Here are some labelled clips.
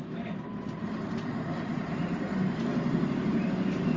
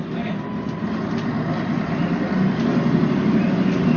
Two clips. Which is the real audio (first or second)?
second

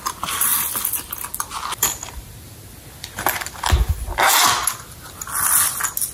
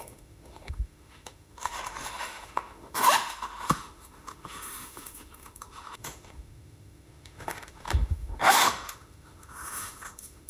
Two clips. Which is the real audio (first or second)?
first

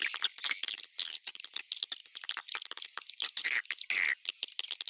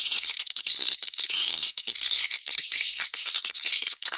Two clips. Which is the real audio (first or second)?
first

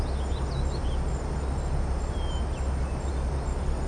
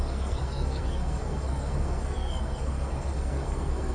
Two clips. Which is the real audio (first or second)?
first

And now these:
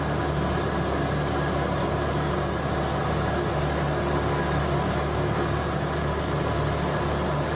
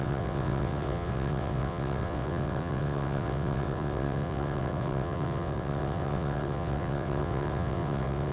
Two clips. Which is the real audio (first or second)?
first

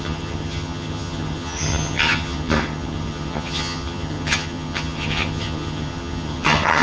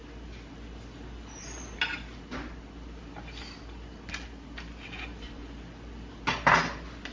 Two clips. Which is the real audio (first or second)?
second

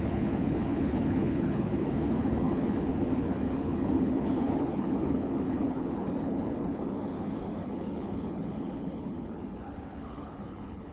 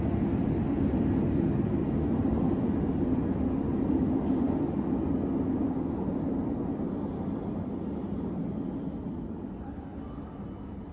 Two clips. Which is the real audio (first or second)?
second